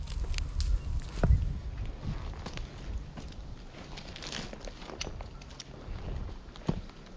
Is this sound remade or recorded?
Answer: recorded